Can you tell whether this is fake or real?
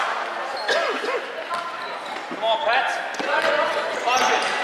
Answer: real